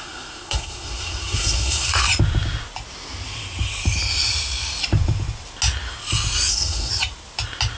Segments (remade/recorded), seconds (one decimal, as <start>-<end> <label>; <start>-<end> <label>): 0.0-1.9 remade; 1.9-6.5 recorded; 6.5-6.9 remade; 6.9-7.8 recorded